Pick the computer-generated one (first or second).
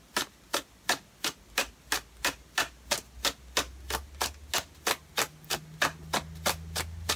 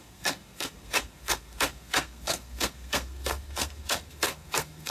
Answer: second